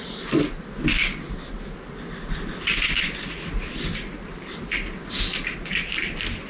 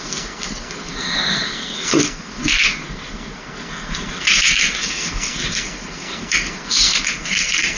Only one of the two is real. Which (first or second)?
first